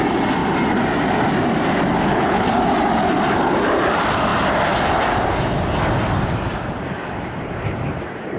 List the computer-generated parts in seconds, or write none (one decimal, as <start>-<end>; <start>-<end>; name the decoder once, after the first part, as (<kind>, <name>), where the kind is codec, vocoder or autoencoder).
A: 2.1-2.6 (codec, HILCodec)